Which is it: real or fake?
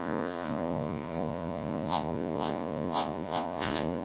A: fake